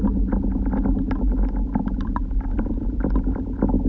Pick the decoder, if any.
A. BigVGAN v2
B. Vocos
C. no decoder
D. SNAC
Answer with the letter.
C